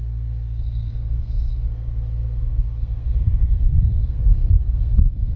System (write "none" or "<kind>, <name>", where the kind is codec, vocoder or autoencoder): codec, SNAC